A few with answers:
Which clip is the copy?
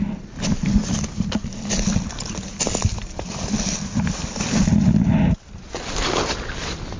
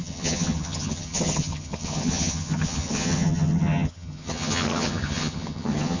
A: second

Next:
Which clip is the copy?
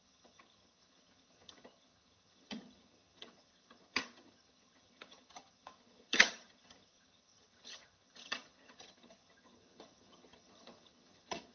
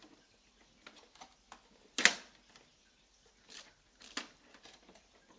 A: first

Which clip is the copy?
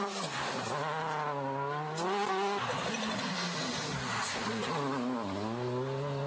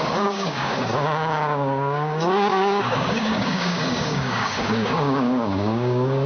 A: second